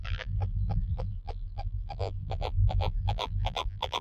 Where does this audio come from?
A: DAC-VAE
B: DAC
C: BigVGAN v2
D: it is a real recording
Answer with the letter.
C